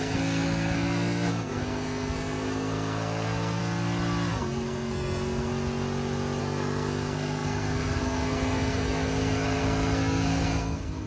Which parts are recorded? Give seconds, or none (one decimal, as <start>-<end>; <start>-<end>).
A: 3.6-4.3; 5.5-6.4